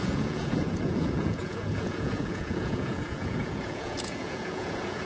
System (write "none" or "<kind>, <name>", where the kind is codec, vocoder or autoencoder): vocoder, Vocos